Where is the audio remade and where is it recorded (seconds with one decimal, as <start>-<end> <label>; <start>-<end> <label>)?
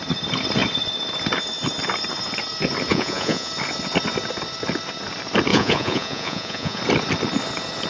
0.0-2.9 recorded; 2.9-3.5 remade; 3.5-5.5 recorded; 5.5-6.8 remade; 6.8-7.9 recorded